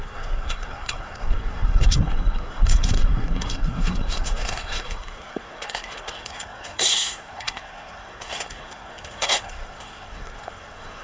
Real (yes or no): no